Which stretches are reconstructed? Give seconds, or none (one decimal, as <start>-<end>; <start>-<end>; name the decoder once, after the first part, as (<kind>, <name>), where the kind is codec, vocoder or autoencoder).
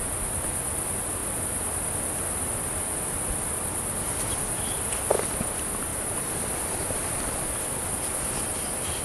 5.9-7.2 (vocoder, BigVGAN v2)